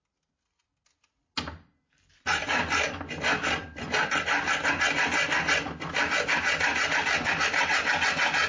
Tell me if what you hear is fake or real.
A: real